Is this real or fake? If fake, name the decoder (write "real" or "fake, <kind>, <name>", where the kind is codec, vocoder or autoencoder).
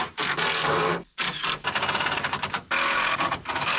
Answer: real